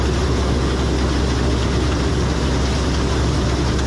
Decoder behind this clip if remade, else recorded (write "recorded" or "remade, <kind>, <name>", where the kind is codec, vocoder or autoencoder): recorded